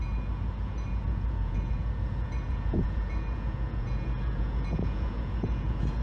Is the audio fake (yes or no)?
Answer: yes